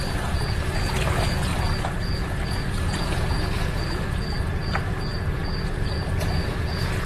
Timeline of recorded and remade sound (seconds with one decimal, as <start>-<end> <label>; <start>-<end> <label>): 0.0-7.1 remade